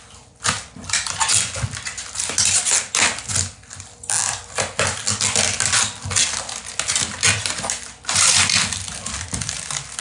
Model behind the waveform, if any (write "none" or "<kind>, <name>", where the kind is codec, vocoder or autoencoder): none